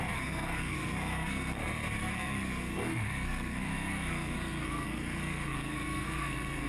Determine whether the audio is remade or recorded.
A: remade